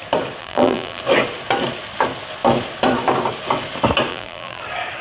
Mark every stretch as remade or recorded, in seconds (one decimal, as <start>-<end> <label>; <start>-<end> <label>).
0.0-0.4 recorded; 0.4-1.0 remade; 1.0-4.1 recorded; 4.1-4.6 remade; 4.6-5.0 recorded